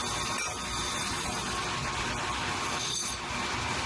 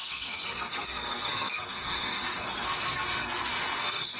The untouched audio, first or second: first